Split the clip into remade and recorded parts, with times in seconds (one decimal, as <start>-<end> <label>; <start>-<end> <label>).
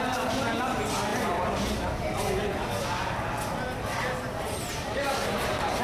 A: 0.0-5.8 recorded